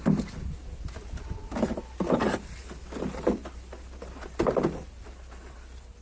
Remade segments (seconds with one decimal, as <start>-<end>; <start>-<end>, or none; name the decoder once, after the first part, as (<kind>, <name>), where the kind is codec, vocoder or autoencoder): none